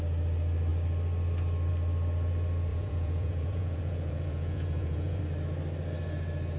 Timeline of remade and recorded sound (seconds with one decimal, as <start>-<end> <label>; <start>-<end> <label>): 0.0-2.7 recorded; 2.7-5.2 remade; 5.2-6.6 recorded